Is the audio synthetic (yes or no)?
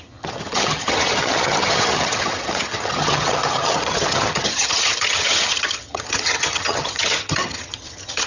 yes